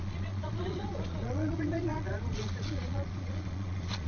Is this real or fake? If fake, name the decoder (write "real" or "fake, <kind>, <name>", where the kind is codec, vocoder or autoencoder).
fake, vocoder, Vocos